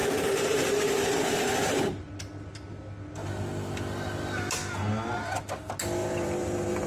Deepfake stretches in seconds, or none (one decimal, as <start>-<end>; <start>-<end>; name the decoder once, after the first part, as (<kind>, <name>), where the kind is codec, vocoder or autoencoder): 0.0-2.1 (vocoder, BigVGAN v2); 6.0-6.9